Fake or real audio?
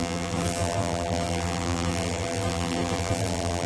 fake